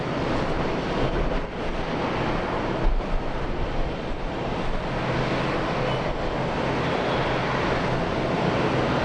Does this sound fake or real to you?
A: real